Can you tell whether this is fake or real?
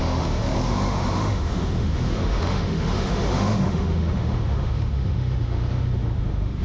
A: fake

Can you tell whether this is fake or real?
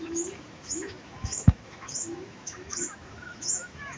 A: fake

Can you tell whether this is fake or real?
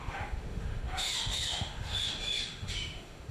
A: fake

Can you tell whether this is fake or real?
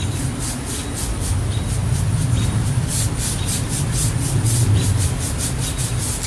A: real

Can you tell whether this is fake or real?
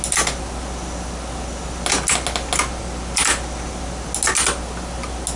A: real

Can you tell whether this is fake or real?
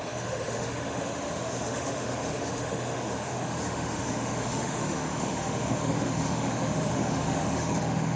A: fake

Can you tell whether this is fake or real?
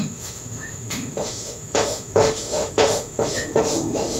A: fake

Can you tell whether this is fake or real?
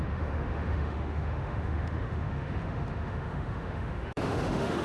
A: fake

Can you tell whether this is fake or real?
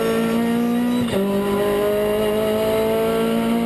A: real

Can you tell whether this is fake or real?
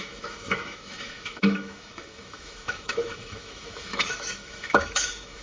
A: fake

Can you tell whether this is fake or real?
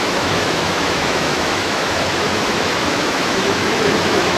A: fake